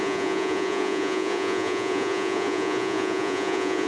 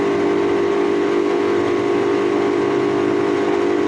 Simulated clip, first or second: first